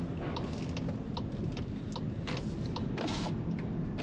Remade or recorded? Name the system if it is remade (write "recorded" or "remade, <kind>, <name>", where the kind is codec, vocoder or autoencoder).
recorded